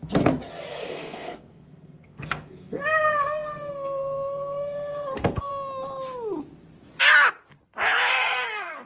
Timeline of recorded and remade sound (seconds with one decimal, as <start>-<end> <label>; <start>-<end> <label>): 0.0-0.7 recorded; 0.7-5.5 remade; 5.5-8.1 recorded; 8.1-8.9 remade